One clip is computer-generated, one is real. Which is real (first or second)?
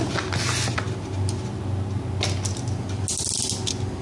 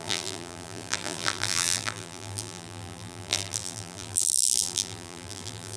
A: first